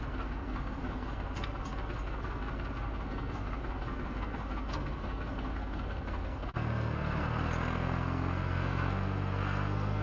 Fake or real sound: fake